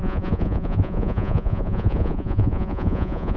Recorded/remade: remade